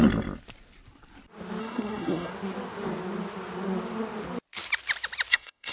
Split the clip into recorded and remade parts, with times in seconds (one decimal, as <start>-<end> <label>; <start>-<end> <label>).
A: 0.0-1.6 recorded; 1.6-2.3 remade; 2.3-5.3 recorded; 5.3-5.7 remade